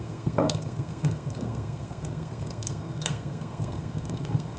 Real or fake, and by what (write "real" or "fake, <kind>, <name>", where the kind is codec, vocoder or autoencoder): fake, codec, SNAC